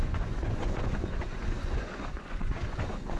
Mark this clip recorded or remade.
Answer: remade